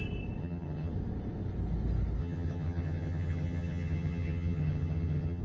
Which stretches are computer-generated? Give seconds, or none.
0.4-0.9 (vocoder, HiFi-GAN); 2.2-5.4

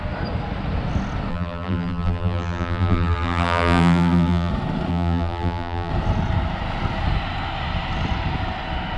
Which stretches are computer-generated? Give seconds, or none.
1.3-4.5 (vocoder, BigVGAN v2); 4.9-5.9